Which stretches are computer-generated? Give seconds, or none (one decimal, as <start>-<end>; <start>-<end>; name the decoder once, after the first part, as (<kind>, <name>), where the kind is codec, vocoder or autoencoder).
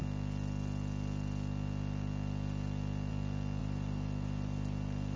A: 3.6-5.2 (vocoder, BigVGAN v2)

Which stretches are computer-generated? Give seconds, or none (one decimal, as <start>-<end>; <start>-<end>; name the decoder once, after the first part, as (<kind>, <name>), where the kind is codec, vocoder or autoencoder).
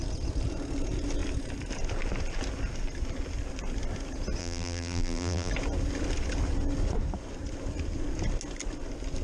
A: 4.4-5.5 (vocoder, BigVGAN v2)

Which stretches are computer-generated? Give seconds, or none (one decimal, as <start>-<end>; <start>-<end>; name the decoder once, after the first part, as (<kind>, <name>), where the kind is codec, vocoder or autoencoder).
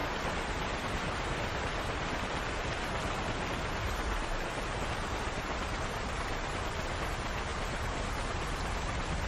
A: none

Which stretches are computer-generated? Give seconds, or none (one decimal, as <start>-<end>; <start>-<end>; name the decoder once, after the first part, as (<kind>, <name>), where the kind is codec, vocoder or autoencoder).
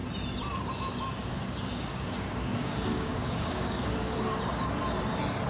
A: 1.2-4.4 (codec, DAC)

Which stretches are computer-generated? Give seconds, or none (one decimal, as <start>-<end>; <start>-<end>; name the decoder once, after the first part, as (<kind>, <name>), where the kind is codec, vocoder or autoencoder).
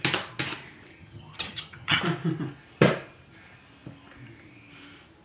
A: 0.9-2.0 (vocoder, HiFi-GAN)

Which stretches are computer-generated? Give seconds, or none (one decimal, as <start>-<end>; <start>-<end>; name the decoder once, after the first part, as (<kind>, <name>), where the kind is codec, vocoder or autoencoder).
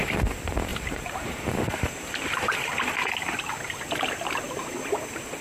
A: 0.7-3.1 (vocoder, BigVGAN v2)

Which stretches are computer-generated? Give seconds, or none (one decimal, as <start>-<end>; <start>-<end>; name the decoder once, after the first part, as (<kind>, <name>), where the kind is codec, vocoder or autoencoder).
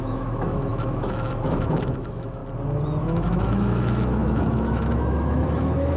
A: 0.0-2.4 (autoencoder, DAC-VAE); 3.0-6.0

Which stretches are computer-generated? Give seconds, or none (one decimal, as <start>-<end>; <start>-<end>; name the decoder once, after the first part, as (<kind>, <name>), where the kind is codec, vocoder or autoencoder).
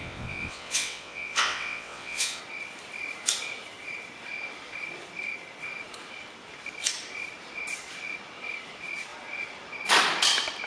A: 0.0-2.4 (vocoder, WaveNeXt)